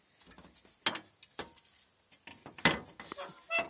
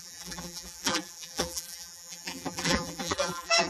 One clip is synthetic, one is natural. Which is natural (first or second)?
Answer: first